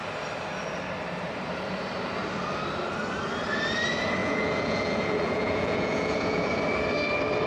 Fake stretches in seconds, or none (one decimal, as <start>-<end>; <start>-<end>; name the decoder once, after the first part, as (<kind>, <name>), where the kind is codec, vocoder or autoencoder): 4.2-6.5 (vocoder, Vocos)